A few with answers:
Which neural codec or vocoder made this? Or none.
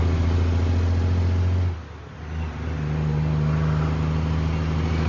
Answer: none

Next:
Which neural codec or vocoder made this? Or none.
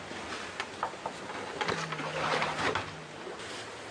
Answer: none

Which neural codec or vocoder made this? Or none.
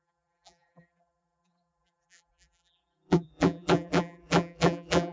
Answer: vocoder, BigVGAN v2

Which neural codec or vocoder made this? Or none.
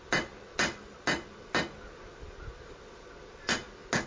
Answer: none